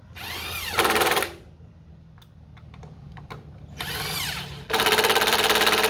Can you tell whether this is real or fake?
real